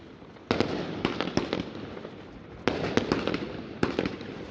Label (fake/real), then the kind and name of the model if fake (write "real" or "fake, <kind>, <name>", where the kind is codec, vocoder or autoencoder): real